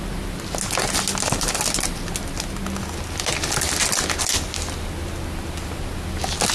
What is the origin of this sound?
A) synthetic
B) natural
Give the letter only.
B